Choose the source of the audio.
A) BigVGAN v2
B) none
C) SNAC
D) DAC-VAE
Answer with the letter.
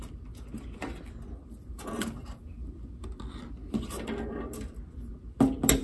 B